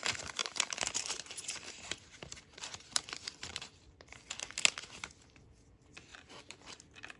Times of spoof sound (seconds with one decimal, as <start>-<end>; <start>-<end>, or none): 0.4-3.1; 3.5-4.1; 6.1-6.7